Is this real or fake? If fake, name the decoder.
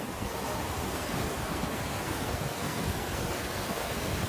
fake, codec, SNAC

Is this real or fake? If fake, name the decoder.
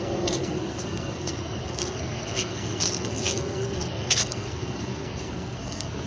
fake, codec, SNAC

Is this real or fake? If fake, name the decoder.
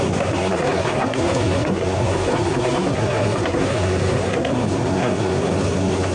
fake, codec, SNAC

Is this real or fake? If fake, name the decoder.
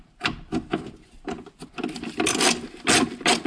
real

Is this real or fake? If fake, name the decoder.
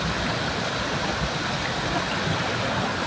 real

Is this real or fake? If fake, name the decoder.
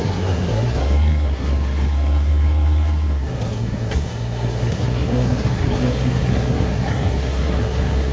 fake, codec, SNAC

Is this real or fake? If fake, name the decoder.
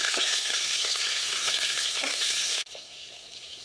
fake, codec, SNAC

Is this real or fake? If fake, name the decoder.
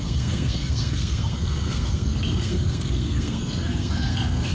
fake, codec, SNAC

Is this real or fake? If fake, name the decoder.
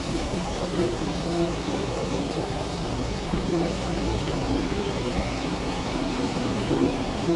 fake, codec, SNAC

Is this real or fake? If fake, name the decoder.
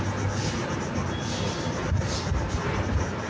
real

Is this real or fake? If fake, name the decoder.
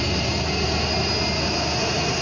real